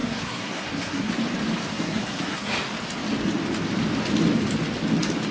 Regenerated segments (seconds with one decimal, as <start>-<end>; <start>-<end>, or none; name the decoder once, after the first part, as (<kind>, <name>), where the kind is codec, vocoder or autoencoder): 0.0-1.1 (codec, SNAC); 1.7-2.5